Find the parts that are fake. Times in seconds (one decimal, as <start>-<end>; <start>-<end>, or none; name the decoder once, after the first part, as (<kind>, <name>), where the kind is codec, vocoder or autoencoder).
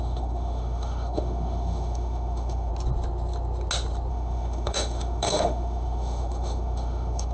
0.0-2.7 (autoencoder, DAC-VAE); 4.1-7.3